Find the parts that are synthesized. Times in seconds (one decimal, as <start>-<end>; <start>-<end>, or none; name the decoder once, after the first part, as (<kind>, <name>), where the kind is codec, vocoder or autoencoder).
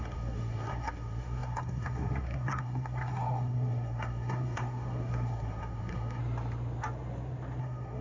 0.0-6.2 (codec, SNAC); 7.6-8.0